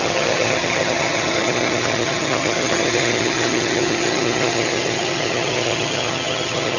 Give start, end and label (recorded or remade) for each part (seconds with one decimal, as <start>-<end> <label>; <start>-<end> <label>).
0.0-6.8 remade